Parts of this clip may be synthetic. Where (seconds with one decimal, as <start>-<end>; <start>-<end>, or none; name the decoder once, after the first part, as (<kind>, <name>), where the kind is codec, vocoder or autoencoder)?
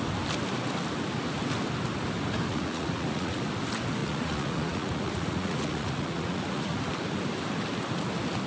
2.5-3.4 (vocoder, Vocos); 4.0-6.8